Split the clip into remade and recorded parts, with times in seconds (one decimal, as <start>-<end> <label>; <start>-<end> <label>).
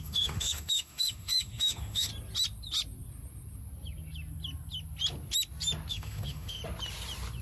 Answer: 0.0-2.1 remade; 2.1-5.9 recorded; 5.9-6.6 remade; 6.6-7.4 recorded